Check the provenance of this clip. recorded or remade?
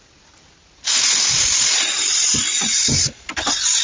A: recorded